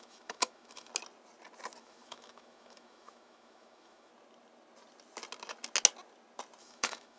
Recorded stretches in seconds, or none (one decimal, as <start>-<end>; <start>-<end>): 0.9-1.8; 4.1-6.6